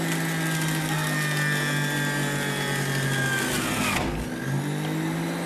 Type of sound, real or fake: real